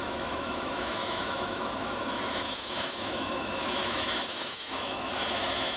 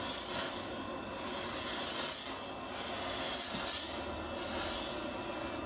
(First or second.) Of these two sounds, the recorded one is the second